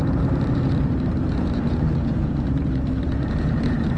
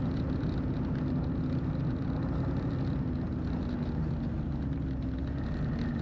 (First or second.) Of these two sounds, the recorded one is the second